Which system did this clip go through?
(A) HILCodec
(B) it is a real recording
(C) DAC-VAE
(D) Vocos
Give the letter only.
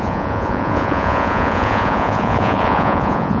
D